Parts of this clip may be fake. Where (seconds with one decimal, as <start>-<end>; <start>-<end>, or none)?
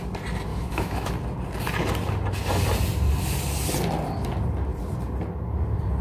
0.5-1.1